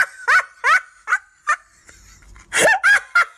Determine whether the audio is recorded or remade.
recorded